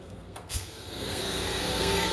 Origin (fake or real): fake